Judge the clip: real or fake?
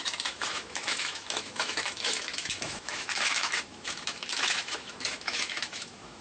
fake